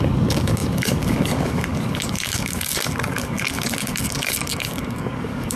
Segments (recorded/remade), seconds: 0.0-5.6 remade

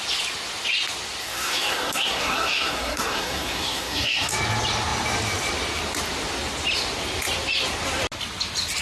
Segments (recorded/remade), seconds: 0.0-1.2 recorded; 1.2-4.3 remade; 4.3-8.8 recorded

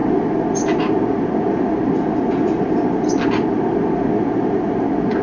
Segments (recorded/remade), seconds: 0.0-5.2 recorded

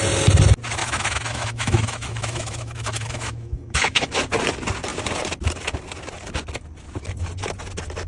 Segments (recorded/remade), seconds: 0.0-0.8 recorded; 0.8-4.2 remade; 4.2-8.1 recorded

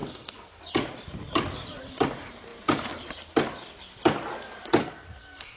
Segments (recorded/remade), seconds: 0.0-0.6 remade; 0.6-4.8 recorded; 4.8-5.6 remade